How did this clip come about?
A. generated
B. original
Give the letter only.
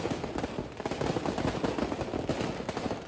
B